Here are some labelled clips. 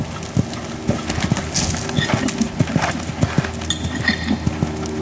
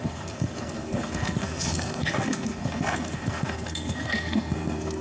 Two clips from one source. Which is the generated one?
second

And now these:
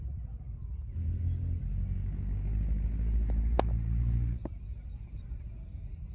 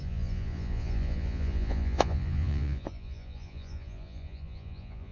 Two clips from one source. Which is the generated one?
second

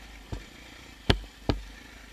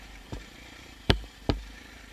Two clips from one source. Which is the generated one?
second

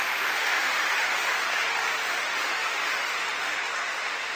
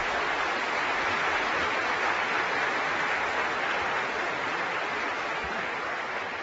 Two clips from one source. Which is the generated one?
first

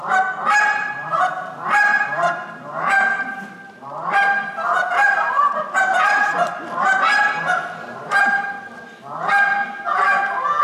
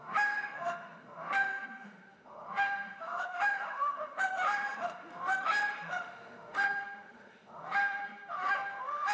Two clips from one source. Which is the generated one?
second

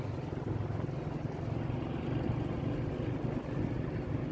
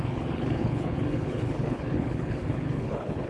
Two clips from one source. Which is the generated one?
second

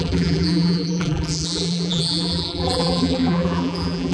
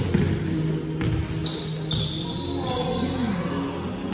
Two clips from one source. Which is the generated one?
first